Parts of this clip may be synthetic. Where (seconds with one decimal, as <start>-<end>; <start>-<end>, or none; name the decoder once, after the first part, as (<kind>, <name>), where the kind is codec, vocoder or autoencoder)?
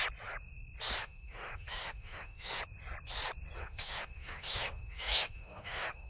1.0-2.6 (autoencoder, DAC-VAE); 3.6-6.1